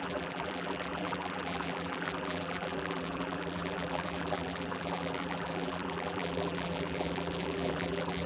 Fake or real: fake